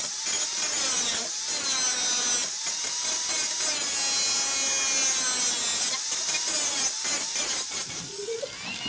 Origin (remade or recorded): recorded